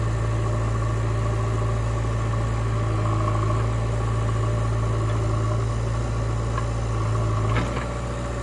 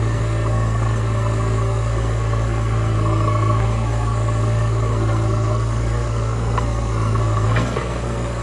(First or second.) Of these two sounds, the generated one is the second